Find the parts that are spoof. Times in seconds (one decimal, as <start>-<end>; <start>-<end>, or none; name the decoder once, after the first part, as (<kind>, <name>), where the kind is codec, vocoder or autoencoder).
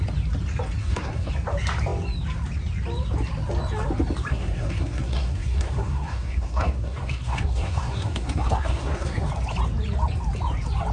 0.8-1.3 (codec, SNAC); 4.3-9.3